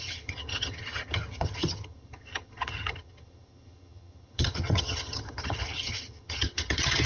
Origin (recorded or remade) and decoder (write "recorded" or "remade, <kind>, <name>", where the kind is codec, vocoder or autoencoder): remade, vocoder, HiFi-GAN